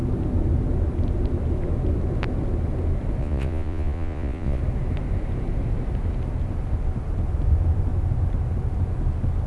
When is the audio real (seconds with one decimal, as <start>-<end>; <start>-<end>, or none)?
0.0-3.2; 4.6-9.5